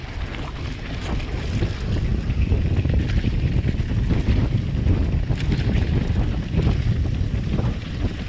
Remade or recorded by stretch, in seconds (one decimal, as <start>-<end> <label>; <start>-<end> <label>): 0.0-2.1 recorded; 2.1-2.7 remade; 2.7-4.2 recorded; 4.2-7.9 remade; 7.9-8.3 recorded